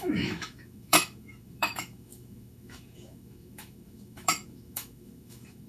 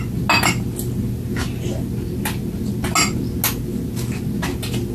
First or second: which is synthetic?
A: first